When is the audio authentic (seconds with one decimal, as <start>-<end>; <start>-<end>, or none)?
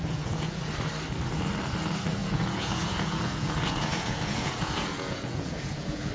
0.6-2.2